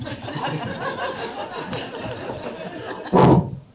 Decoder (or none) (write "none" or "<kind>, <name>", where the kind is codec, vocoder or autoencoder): none